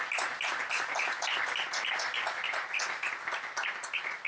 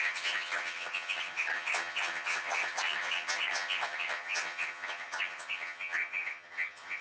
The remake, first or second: second